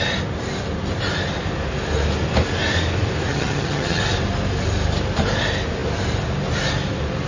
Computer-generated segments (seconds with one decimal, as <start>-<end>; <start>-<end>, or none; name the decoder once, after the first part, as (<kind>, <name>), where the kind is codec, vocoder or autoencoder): 3.3-4.0 (vocoder, HiFi-GAN)